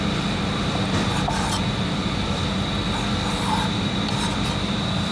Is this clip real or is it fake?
fake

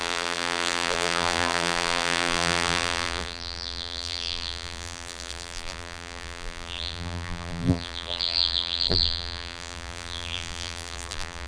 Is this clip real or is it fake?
fake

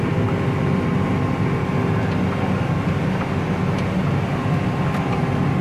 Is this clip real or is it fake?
real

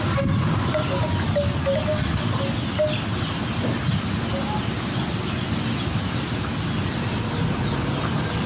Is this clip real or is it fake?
real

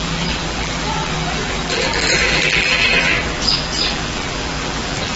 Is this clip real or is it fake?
fake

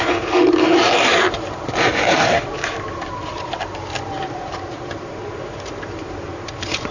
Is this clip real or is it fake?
fake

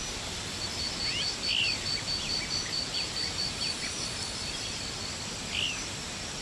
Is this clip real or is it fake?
real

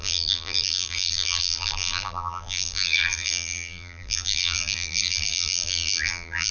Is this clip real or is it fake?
fake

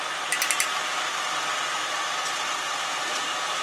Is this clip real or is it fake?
real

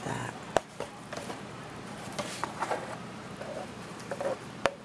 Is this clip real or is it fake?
fake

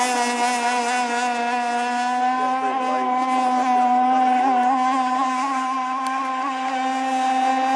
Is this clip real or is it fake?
real